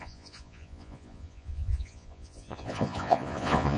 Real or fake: fake